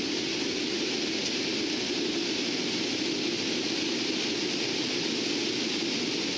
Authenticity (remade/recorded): recorded